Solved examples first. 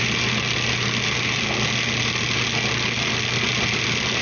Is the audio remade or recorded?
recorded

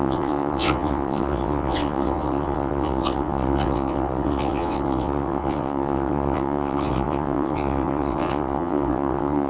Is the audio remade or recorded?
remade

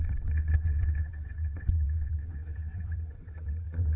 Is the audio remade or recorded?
remade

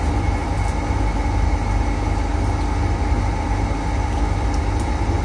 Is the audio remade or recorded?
recorded